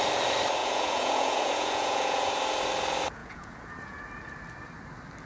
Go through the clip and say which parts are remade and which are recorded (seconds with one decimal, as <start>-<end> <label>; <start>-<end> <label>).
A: 0.0-0.6 recorded; 0.6-2.3 remade; 2.3-3.2 recorded; 3.2-4.0 remade; 4.0-5.3 recorded